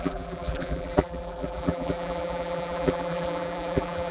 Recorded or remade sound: remade